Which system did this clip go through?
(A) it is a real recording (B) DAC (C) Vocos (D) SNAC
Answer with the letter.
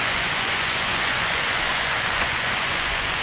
C